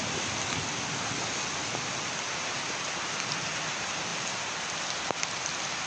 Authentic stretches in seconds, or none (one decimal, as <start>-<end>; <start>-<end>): 0.0-5.9